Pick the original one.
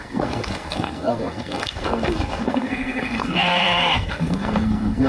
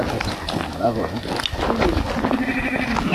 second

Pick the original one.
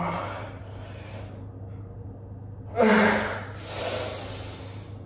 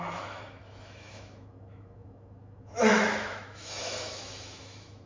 first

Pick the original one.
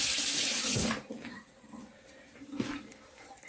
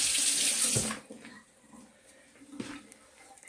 second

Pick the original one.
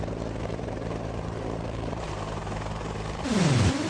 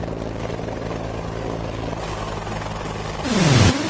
second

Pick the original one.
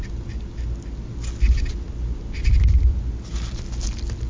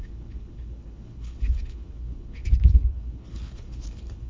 first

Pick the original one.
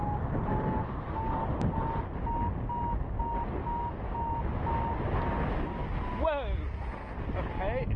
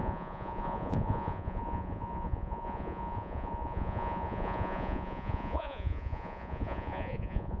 first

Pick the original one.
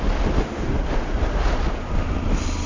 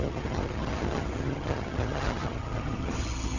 first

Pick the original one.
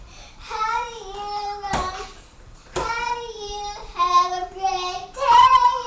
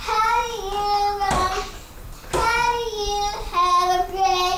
second